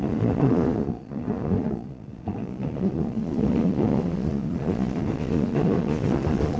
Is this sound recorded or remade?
remade